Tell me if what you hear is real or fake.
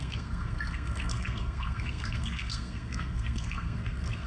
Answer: fake